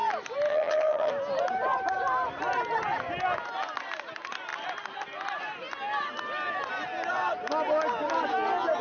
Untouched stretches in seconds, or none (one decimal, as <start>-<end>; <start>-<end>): 0.0-0.5; 1.1-8.8